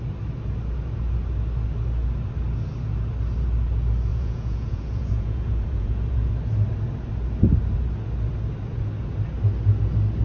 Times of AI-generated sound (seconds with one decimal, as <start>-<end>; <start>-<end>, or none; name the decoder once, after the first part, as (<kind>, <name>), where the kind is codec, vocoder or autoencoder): 4.1-6.3 (vocoder, Vocos)